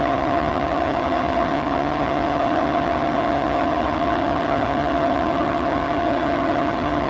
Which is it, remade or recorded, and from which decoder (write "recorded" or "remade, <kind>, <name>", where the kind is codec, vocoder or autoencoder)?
remade, vocoder, HiFi-GAN